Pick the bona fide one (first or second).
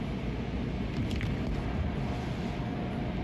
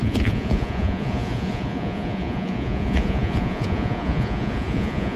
first